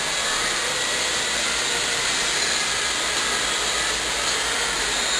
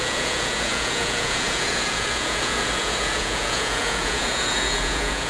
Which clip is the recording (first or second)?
first